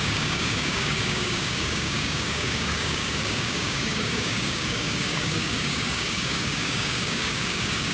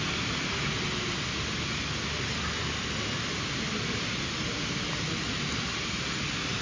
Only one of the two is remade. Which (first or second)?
first